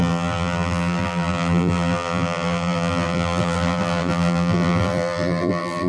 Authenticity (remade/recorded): remade